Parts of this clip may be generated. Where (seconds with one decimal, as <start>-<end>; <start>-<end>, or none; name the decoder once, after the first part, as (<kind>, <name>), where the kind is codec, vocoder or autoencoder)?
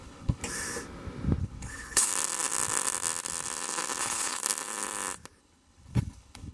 0.0-0.4 (codec, HILCodec); 1.4-2.1; 4.0-4.4; 5.4-6.5